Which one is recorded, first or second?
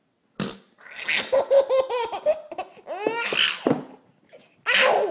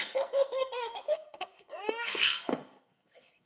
first